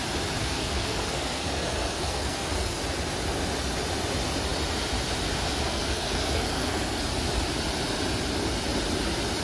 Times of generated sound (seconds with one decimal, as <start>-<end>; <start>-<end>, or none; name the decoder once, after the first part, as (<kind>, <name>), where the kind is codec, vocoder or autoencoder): 0.4-2.8 (codec, SNAC); 5.7-7.0